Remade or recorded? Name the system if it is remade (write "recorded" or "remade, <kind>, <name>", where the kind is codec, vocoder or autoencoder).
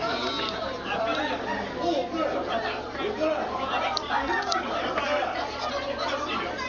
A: recorded